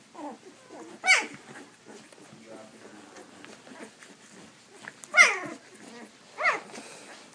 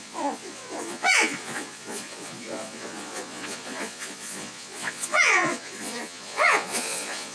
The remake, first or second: second